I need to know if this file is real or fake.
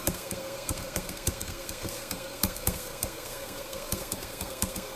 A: fake